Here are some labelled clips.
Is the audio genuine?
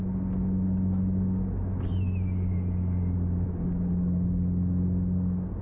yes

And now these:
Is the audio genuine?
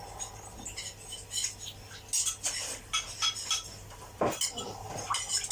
yes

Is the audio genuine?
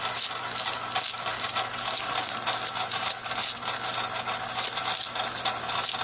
yes